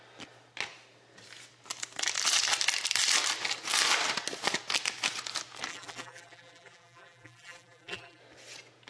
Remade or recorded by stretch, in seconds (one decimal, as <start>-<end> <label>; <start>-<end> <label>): 0.0-5.7 recorded; 5.7-8.2 remade; 8.2-8.9 recorded